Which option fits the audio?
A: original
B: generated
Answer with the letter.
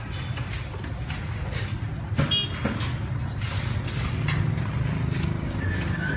A